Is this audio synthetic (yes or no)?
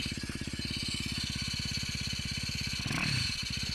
no